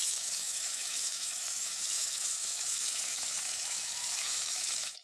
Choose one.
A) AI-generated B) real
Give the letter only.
A